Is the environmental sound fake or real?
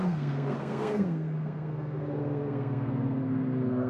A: fake